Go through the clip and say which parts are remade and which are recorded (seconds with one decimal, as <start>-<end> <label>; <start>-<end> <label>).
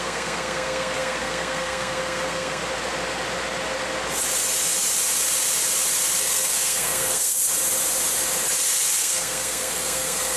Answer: 0.0-2.6 remade; 2.6-6.2 recorded; 6.2-7.4 remade; 7.4-9.0 recorded; 9.0-10.4 remade